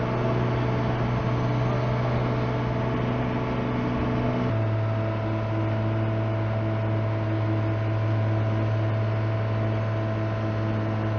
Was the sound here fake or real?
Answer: real